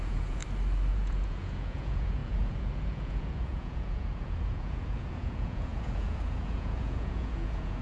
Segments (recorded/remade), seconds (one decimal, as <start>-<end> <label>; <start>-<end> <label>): 0.0-0.4 remade; 0.4-0.9 recorded; 0.9-7.8 remade